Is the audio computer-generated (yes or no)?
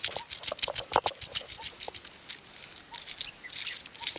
no